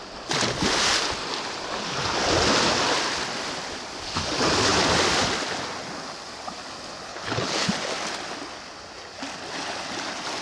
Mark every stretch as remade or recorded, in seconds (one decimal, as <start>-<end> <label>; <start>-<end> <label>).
0.0-7.1 recorded; 7.1-7.7 remade; 7.7-10.4 recorded